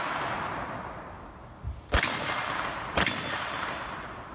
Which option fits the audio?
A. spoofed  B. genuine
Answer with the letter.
B